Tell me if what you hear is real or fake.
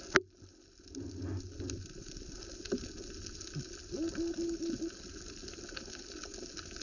real